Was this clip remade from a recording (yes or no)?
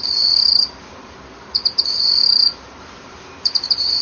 yes